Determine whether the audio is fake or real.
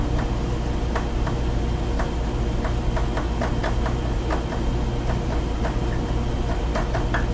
real